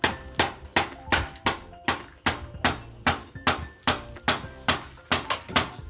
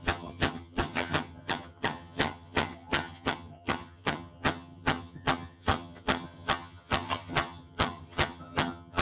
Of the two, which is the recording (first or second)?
first